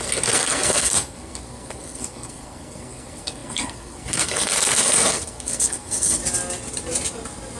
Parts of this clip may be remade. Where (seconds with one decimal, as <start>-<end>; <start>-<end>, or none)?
0.0-6.2